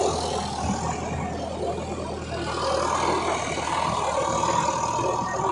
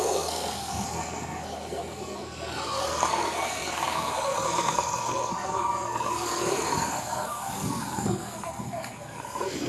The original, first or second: first